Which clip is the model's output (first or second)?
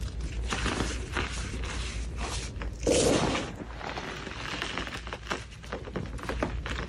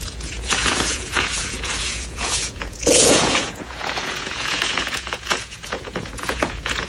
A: second